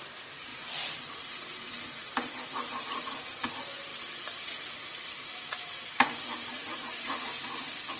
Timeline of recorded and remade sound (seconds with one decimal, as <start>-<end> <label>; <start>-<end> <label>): 0.0-0.5 recorded; 0.5-3.5 remade; 3.5-6.6 recorded; 6.6-7.6 remade; 7.6-8.0 recorded